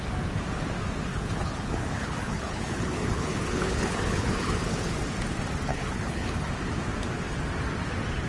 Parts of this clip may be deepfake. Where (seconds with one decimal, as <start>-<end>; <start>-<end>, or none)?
1.1-5.0; 5.7-6.5